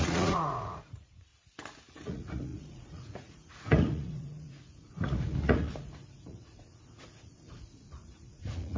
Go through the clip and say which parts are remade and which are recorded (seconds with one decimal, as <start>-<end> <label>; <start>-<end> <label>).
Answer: 0.0-1.3 remade; 1.3-1.9 recorded; 1.9-8.8 remade